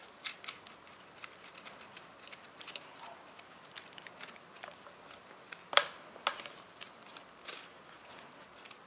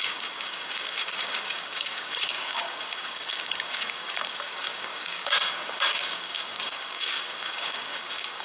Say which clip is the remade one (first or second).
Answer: second